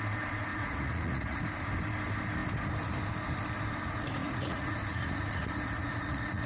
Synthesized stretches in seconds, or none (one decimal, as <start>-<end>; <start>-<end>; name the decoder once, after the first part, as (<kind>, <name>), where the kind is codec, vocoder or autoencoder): 0.5-1.4 (vocoder, Vocos); 4.2-6.5